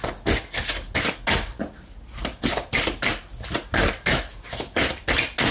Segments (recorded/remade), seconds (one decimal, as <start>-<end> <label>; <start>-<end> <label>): 0.0-5.5 recorded